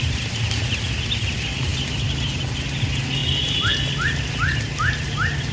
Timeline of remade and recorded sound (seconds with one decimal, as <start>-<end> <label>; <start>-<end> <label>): 0.0-5.5 recorded